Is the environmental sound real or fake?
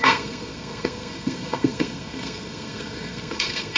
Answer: fake